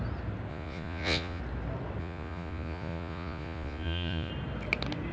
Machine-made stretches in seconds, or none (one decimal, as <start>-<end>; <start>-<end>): 0.5-1.4; 2.0-4.3